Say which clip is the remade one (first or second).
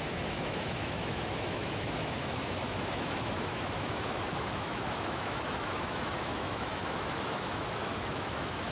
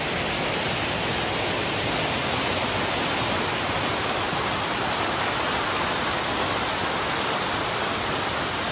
first